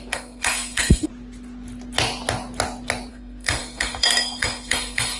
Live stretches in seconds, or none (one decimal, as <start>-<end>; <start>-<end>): 1.1-3.1